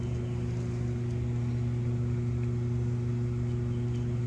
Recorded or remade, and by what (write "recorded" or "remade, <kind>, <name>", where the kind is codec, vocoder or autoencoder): recorded